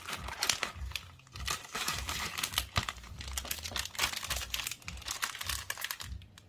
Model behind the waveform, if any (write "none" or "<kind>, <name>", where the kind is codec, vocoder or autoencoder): none